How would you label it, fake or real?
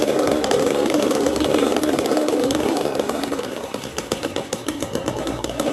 fake